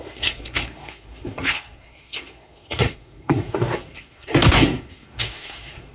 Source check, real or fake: fake